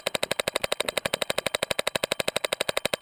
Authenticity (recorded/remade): recorded